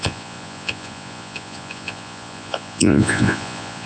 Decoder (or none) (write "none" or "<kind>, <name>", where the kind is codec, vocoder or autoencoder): vocoder, Vocos